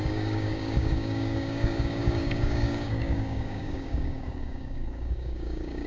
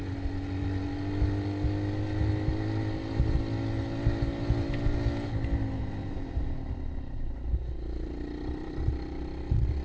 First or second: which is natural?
second